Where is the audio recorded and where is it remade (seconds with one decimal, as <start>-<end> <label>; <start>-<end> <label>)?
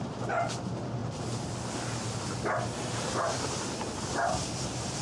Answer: 0.0-5.0 recorded